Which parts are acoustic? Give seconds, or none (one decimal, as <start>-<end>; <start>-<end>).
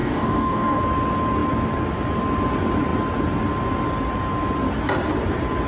0.8-5.7